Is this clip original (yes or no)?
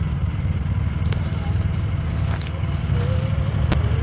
yes